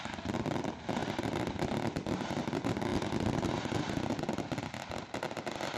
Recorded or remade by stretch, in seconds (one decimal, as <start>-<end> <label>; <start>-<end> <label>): 0.0-1.0 recorded; 1.0-2.4 remade; 2.4-2.9 recorded; 2.9-3.8 remade; 3.8-5.8 recorded